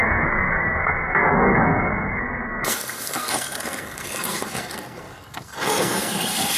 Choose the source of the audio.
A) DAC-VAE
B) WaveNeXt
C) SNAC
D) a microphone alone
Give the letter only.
C